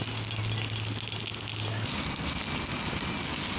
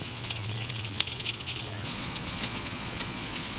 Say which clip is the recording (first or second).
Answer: first